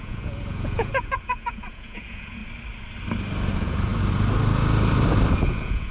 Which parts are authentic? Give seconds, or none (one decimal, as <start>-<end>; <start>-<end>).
2.4-3.5; 3.9-5.3